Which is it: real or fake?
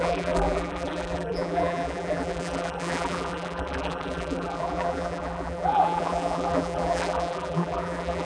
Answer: fake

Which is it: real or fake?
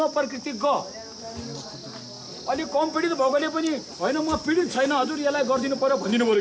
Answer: real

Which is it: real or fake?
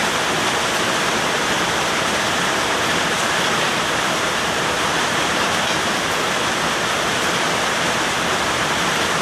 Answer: fake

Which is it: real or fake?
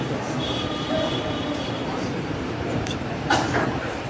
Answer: fake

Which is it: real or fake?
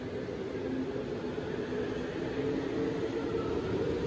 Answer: real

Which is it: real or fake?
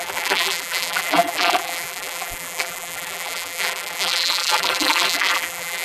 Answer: fake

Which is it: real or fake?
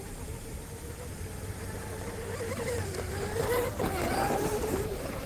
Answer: fake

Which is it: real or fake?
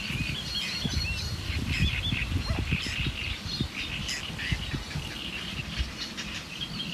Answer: real